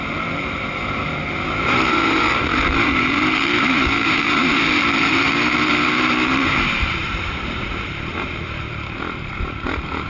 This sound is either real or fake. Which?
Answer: fake